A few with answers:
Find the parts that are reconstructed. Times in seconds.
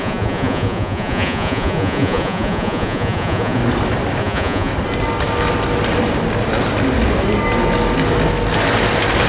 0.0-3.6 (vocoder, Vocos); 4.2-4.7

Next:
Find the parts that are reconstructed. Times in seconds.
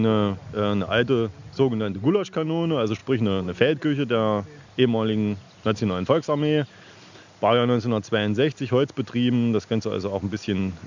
none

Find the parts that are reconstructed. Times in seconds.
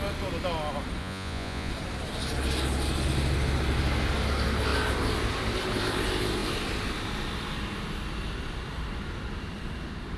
1.0-1.7 (vocoder, Vocos)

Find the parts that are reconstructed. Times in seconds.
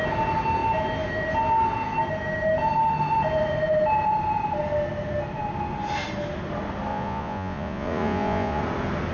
6.9-8.6 (vocoder, Vocos)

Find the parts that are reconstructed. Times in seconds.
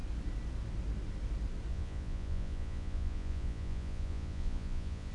1.7-5.1 (vocoder, Vocos)